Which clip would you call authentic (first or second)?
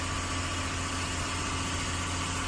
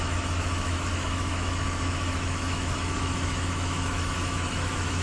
first